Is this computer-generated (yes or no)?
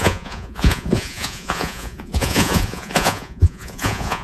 yes